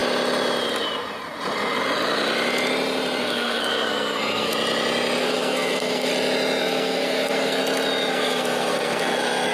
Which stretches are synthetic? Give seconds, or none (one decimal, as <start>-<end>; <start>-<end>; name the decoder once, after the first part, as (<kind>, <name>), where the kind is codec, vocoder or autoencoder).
3.2-4.5 (codec, SNAC); 5.2-6.1; 6.6-7.6; 8.1-9.5